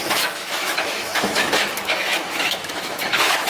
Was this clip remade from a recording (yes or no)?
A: yes